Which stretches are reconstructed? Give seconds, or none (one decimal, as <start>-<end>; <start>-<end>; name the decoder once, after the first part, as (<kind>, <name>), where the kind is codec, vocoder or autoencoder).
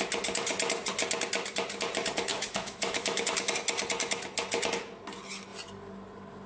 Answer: 2.3-3.2 (autoencoder, DAC-VAE)